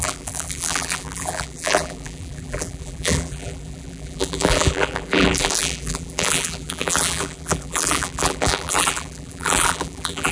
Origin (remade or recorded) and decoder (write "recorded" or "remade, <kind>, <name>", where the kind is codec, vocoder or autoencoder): remade, vocoder, BigVGAN v2